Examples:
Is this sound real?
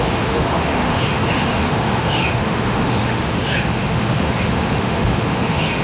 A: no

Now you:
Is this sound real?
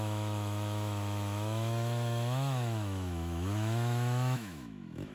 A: no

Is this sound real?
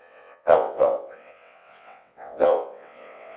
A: no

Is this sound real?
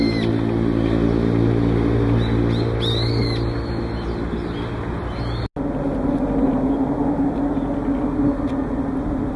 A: yes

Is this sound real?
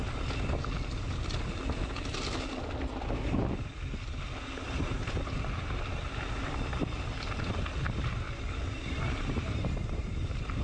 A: yes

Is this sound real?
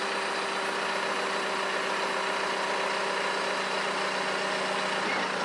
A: yes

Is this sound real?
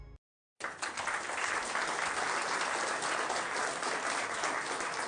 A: yes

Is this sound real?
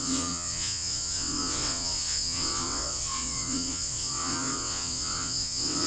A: no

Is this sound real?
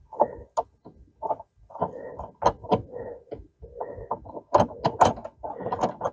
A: yes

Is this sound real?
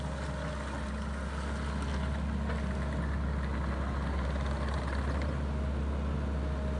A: yes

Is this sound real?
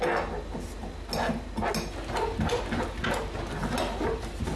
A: yes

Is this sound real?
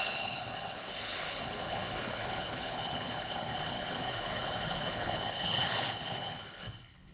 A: no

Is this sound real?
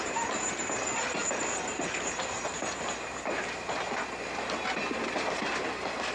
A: no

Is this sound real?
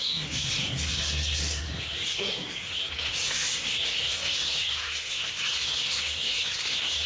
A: no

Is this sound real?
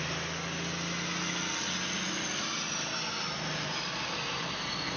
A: yes